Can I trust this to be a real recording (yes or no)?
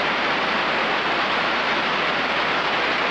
yes